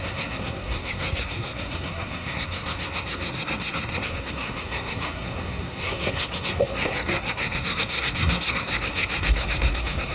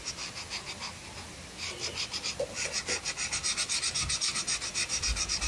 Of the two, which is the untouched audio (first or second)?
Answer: second